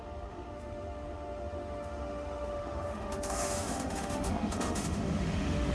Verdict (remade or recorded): remade